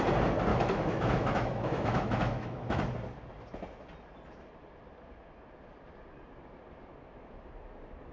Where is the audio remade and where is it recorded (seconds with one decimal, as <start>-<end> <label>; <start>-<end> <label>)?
0.0-0.5 recorded; 0.5-2.8 remade; 2.8-8.1 recorded